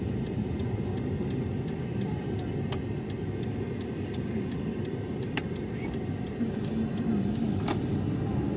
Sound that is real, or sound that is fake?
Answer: real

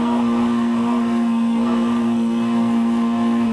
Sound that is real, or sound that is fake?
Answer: fake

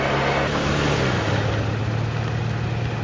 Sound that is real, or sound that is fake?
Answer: real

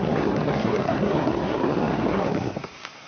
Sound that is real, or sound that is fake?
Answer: fake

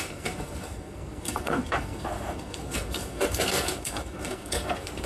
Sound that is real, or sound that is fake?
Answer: fake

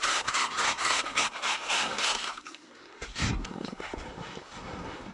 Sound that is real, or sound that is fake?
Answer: fake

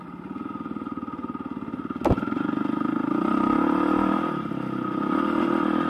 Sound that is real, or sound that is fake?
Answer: real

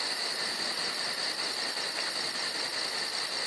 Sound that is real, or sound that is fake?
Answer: real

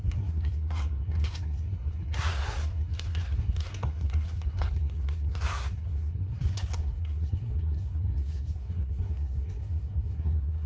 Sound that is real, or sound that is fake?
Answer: fake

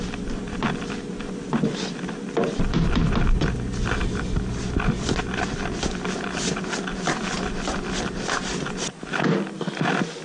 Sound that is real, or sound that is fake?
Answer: real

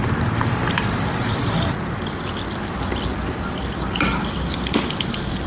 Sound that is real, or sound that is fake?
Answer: real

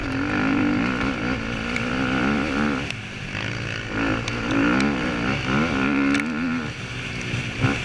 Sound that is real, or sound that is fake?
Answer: real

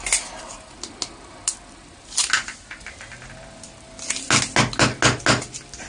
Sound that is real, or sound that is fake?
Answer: real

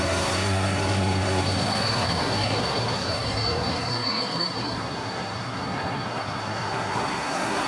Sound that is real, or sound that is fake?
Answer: fake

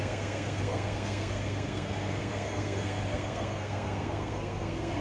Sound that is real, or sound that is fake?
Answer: fake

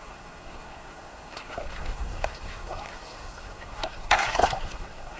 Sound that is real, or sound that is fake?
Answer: fake